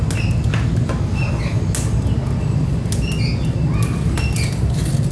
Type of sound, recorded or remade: recorded